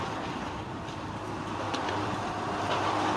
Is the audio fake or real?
fake